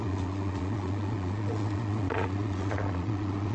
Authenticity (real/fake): fake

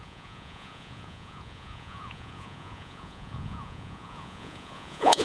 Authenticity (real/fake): fake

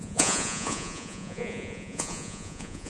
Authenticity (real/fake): fake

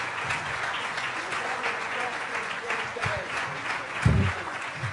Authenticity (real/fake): fake